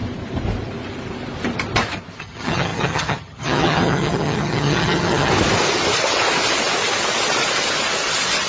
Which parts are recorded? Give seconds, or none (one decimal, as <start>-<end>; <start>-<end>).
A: 0.0-2.2; 5.3-8.5

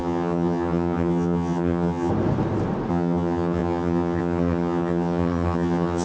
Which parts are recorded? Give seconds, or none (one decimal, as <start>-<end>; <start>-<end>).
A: 2.1-2.9

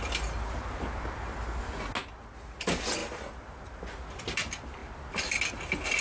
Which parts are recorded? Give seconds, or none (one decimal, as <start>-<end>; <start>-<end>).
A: 0.0-6.0

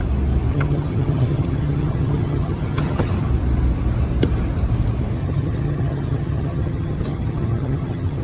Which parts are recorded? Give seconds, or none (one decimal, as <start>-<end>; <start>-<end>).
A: 0.0-0.5; 3.3-5.2

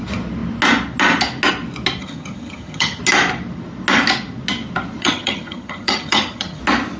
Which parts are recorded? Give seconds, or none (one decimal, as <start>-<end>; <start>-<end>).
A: 0.0-2.0; 3.0-5.0; 6.6-7.0